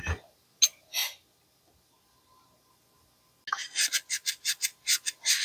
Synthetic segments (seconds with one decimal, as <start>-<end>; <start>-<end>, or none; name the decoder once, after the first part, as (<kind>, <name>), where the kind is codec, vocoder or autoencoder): none